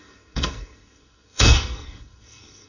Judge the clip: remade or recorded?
remade